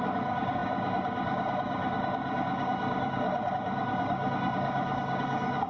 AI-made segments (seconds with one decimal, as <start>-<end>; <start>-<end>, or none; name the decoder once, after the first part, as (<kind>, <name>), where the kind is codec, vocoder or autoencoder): 0.0-5.7 (codec, DAC)